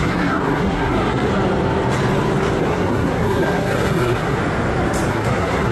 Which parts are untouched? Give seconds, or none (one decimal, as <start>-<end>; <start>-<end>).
1.3-2.6; 4.4-5.1